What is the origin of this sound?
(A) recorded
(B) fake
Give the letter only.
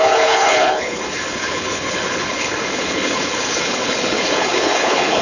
B